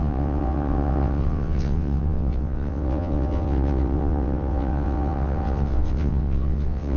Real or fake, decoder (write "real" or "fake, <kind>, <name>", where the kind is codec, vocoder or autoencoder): fake, vocoder, WaveNeXt